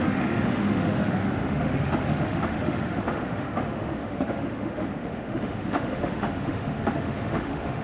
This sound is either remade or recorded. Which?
remade